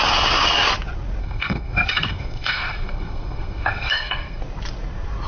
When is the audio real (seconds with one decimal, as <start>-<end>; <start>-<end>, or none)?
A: 0.0-1.2; 4.4-5.3